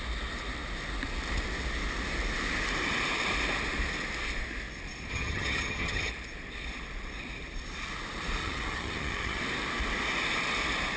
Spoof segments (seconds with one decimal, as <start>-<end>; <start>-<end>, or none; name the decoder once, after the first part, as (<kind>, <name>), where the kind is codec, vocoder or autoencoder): 5.1-6.1 (vocoder, HiFi-GAN); 8.4-9.4